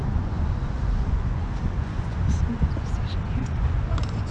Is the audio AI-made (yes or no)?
yes